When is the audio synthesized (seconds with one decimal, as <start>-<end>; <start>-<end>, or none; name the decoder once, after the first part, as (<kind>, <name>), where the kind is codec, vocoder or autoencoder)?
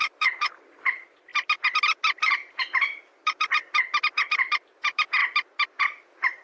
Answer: 0.0-1.3 (vocoder, BigVGAN v2); 4.5-5.2; 5.8-6.4